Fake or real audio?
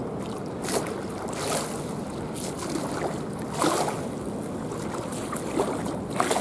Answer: real